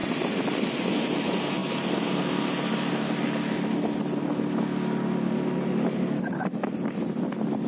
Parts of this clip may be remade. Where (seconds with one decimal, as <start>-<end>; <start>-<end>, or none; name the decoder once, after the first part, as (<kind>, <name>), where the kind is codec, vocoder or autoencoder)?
none

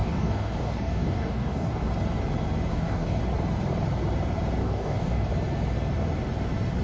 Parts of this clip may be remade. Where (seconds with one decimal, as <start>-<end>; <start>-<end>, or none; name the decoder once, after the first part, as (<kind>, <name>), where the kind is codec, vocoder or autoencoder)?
0.0-1.9 (codec, DAC); 2.7-3.2; 4.6-5.3

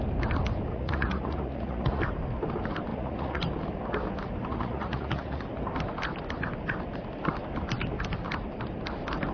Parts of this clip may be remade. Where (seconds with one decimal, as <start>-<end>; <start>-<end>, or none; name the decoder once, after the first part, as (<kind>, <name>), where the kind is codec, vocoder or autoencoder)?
0.7-2.0 (vocoder, Vocos); 2.9-3.4; 4.5-5.4

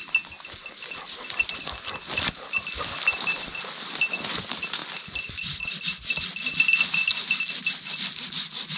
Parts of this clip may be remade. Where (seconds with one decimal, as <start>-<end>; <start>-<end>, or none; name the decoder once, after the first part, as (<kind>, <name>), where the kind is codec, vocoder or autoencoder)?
none

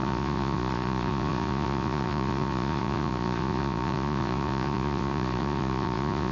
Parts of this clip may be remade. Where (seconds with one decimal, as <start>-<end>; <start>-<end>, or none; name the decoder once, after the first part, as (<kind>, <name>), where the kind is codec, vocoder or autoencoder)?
0.0-6.3 (vocoder, Vocos)

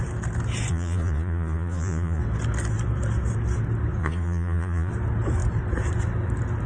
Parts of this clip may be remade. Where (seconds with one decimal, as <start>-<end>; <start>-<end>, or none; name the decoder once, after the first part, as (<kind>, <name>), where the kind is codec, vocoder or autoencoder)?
0.7-2.2 (vocoder, Vocos); 4.0-4.9

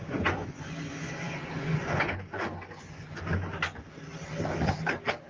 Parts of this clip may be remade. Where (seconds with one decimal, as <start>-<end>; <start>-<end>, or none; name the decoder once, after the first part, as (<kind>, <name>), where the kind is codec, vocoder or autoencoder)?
0.0-3.2 (vocoder, Vocos)